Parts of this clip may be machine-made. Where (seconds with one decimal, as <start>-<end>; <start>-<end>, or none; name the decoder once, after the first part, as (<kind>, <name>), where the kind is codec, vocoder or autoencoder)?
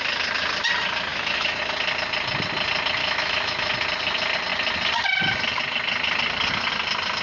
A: 1.1-1.6 (autoencoder, DAC-VAE); 3.0-3.7